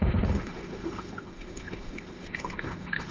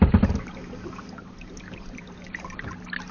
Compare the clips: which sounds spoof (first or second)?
first